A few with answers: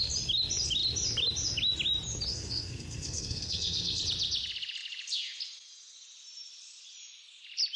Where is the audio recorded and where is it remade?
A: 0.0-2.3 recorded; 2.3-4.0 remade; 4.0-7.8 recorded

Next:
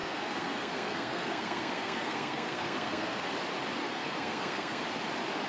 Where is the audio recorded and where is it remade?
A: 0.0-3.3 remade; 3.3-3.8 recorded; 3.8-4.8 remade; 4.8-5.5 recorded

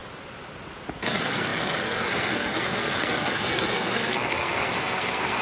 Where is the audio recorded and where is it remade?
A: 0.0-0.9 recorded; 0.9-5.4 remade

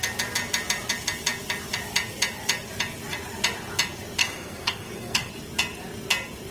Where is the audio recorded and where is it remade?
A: 0.0-4.2 recorded; 4.2-5.3 remade; 5.3-6.5 recorded

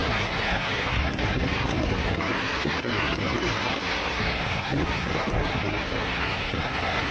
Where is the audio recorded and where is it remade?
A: 0.0-7.1 remade

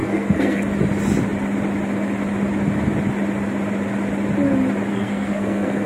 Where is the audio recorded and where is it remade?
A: 0.0-0.6 remade; 0.6-4.9 recorded; 4.9-5.9 remade

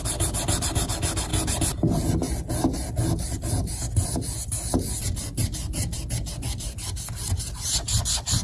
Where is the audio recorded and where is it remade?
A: 0.0-8.4 recorded